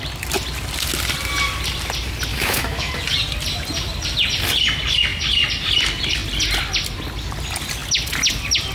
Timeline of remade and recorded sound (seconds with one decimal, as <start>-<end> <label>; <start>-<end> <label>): 0.0-2.3 recorded; 2.3-2.9 remade; 2.9-8.7 recorded